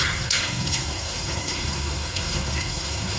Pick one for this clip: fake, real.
fake